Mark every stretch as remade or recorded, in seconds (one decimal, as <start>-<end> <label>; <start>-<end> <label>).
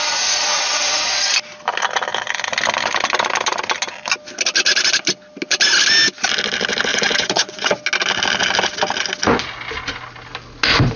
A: 0.0-0.5 recorded; 0.5-1.2 remade; 1.2-6.9 recorded; 6.9-7.7 remade; 7.7-11.0 recorded